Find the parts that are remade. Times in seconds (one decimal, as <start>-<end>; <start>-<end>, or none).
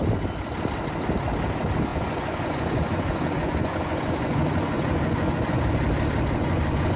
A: 1.9-5.4; 6.4-7.0